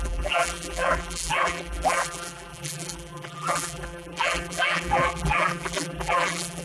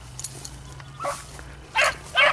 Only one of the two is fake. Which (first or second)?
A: first